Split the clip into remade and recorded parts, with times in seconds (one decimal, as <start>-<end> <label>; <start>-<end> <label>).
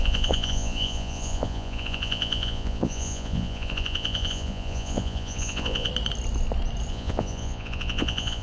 0.0-5.9 remade; 5.9-6.9 recorded; 6.9-8.4 remade